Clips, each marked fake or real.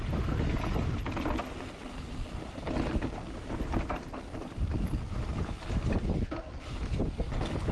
real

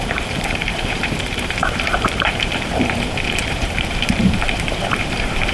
fake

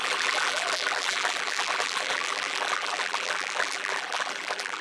fake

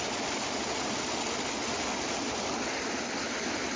real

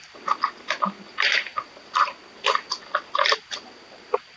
real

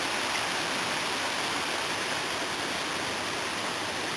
real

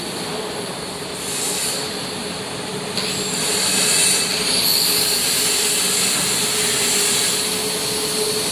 real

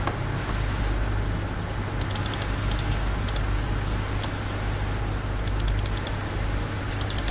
real